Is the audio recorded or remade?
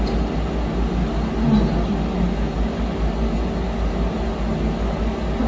recorded